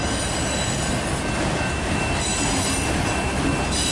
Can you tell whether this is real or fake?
real